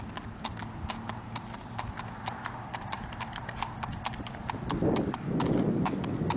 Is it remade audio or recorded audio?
recorded